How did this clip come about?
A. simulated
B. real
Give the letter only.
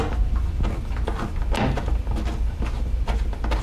B